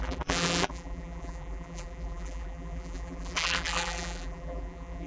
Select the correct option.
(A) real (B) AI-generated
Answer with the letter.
B